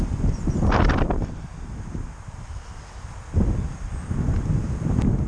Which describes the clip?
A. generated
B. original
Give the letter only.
B